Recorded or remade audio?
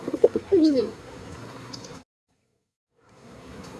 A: remade